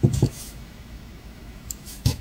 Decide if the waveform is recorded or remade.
remade